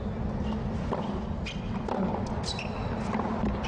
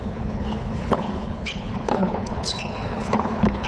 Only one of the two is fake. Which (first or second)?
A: second